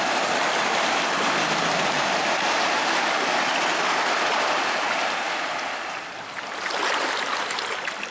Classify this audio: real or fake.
real